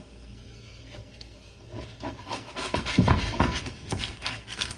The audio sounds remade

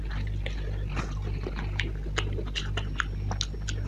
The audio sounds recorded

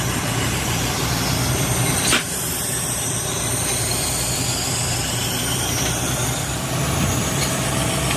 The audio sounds remade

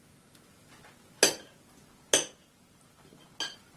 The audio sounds recorded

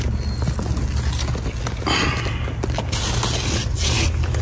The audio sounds recorded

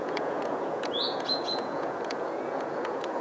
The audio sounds remade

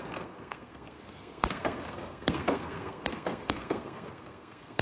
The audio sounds remade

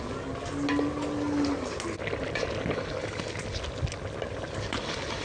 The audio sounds recorded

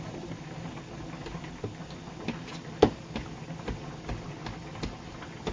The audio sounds recorded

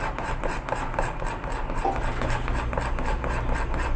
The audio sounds recorded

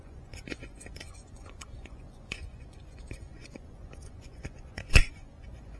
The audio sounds remade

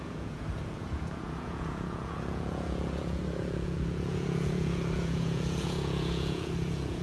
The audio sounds remade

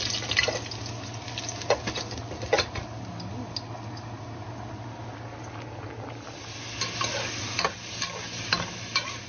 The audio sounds recorded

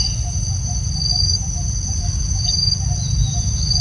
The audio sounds remade